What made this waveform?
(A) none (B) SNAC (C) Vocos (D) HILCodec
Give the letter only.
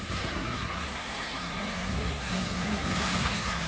B